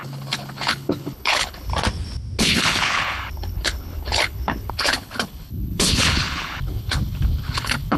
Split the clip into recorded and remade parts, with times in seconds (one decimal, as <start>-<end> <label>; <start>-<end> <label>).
0.0-1.7 remade; 1.7-2.4 recorded; 2.4-8.0 remade